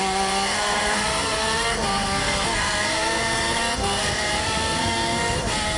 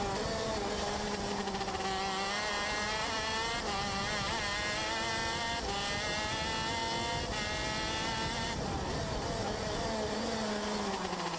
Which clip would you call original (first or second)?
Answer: second